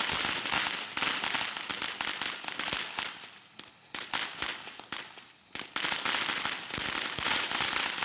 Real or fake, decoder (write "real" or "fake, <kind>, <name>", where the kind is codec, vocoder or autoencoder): real